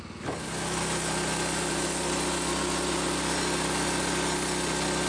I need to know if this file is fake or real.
real